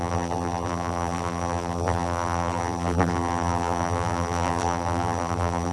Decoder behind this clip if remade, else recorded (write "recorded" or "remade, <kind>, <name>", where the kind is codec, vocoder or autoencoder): remade, vocoder, BigVGAN v2